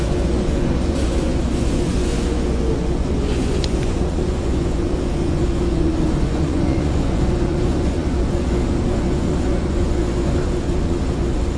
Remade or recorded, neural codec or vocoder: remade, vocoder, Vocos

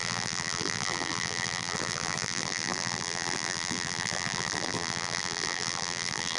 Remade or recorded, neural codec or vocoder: remade, vocoder, BigVGAN v2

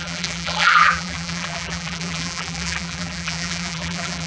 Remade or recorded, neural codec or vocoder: remade, vocoder, BigVGAN v2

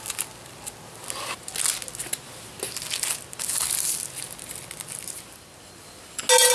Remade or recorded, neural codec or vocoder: recorded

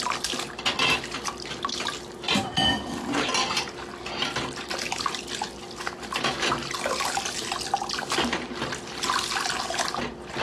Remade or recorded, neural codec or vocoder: recorded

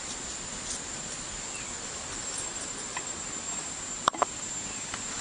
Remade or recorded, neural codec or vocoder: recorded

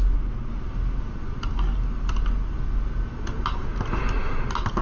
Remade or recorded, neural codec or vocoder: recorded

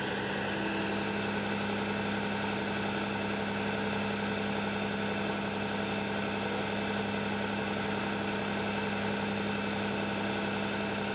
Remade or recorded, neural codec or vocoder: recorded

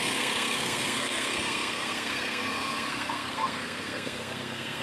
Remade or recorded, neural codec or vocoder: remade, codec, SNAC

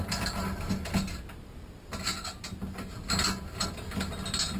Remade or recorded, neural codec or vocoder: recorded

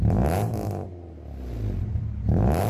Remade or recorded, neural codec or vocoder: recorded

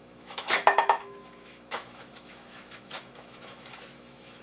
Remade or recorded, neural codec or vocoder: remade, autoencoder, DAC-VAE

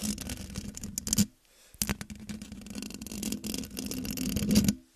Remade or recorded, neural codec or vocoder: recorded